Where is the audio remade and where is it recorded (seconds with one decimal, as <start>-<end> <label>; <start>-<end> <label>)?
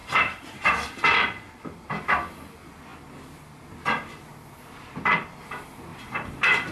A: 0.0-0.6 remade; 0.6-5.9 recorded; 5.9-6.7 remade